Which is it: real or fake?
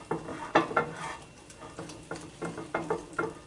real